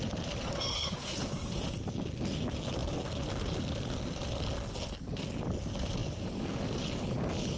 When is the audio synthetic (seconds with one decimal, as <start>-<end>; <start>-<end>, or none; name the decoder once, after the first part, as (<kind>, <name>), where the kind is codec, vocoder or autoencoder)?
0.7-1.2 (codec, HILCodec)